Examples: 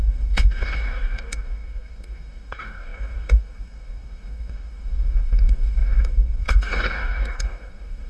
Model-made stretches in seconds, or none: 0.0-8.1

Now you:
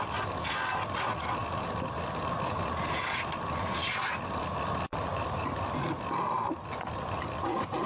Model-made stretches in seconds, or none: none

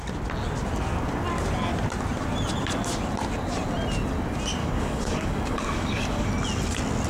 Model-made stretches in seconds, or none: 4.6-6.3

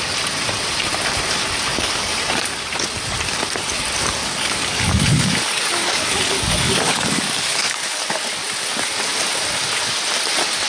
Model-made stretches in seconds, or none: 1.7-2.2; 4.2-7.9

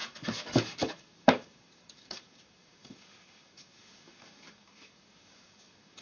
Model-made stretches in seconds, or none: 0.0-6.0

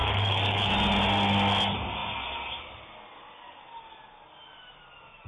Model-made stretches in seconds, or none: 0.0-0.7